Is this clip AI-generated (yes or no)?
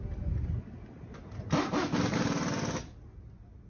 no